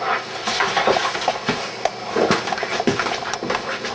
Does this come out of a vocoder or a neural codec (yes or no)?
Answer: no